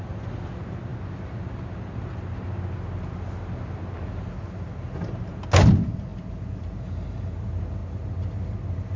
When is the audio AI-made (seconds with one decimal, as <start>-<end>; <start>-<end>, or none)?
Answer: none